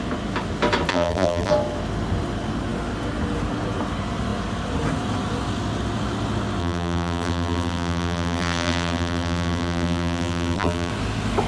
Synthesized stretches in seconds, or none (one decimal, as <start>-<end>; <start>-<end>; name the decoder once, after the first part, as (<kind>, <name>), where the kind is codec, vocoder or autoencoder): 0.9-1.5 (vocoder, BigVGAN v2); 6.6-10.9